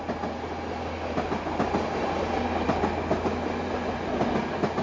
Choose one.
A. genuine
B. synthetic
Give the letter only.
A